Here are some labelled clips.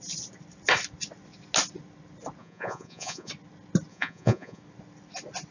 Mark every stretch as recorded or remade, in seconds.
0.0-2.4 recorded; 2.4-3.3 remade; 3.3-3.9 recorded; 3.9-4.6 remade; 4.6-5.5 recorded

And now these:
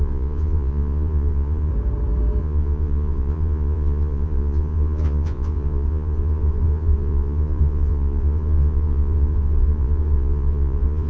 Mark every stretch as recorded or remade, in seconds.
0.0-1.7 remade; 1.7-2.4 recorded; 2.4-11.1 remade

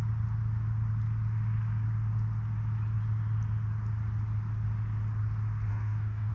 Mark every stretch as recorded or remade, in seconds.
0.0-5.7 recorded; 5.7-6.3 remade